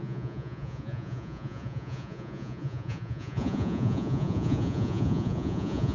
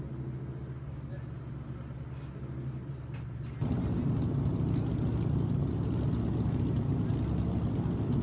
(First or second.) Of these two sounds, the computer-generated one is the first